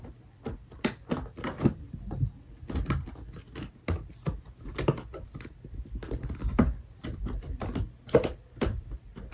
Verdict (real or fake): real